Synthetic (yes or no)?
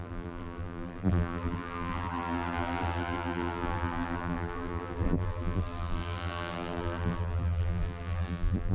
yes